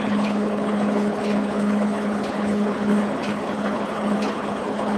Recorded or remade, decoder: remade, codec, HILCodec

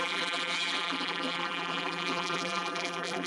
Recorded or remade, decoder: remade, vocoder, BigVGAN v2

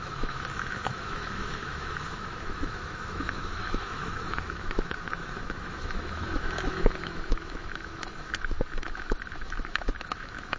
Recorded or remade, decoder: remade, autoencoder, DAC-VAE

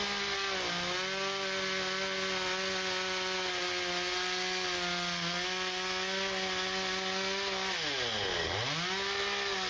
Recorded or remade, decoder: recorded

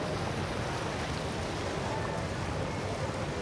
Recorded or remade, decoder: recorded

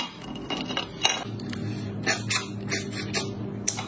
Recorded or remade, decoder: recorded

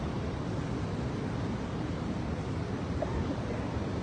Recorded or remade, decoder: recorded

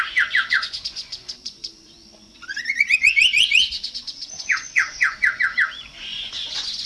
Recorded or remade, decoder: remade, vocoder, Vocos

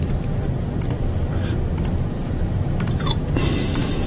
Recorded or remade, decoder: recorded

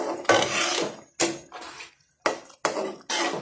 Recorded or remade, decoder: recorded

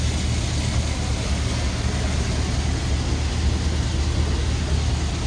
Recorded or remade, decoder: recorded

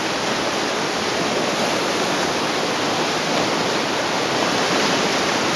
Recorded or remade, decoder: recorded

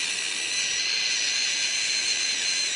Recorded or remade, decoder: recorded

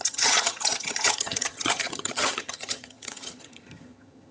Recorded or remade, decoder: remade, vocoder, HiFi-GAN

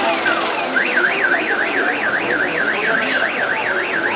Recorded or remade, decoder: recorded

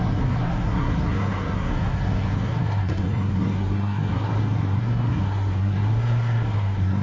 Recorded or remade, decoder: remade, codec, SNAC